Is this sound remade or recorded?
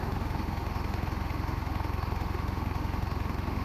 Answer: remade